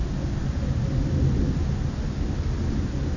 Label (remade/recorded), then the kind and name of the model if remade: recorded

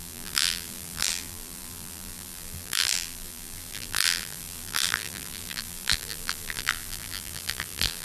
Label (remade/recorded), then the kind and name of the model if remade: remade, vocoder, BigVGAN v2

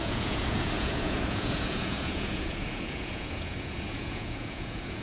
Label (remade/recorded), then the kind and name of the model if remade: remade, vocoder, Vocos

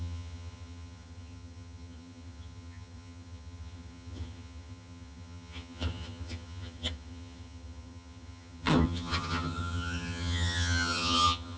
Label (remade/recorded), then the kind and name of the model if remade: remade, vocoder, HiFi-GAN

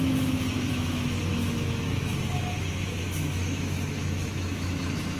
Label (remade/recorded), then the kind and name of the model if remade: remade, autoencoder, DAC-VAE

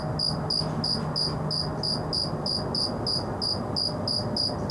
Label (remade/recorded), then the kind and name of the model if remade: recorded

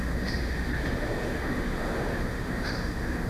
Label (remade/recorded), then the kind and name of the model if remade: remade, autoencoder, DAC-VAE